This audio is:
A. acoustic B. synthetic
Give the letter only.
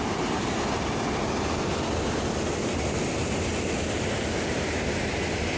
A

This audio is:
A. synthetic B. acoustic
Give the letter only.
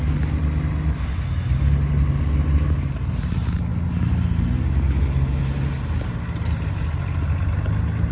B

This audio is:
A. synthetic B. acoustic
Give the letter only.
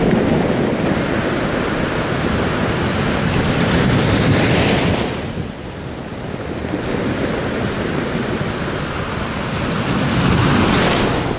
B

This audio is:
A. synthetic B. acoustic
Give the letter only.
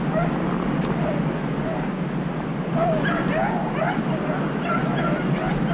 B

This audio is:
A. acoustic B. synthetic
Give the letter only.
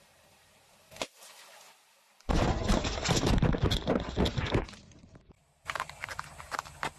B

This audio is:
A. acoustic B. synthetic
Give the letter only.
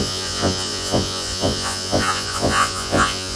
B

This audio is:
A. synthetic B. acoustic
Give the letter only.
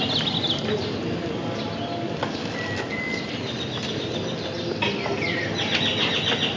B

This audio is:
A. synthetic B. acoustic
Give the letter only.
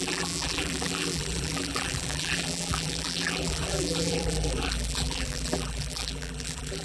A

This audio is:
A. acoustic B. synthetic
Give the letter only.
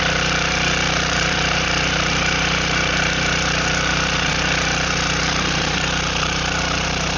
B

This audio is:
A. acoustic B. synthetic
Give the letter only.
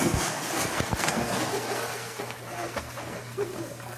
B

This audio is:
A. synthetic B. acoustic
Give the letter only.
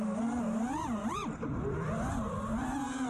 B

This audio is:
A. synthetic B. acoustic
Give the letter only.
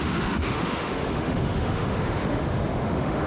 A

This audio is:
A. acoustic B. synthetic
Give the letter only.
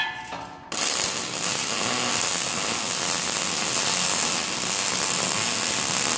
A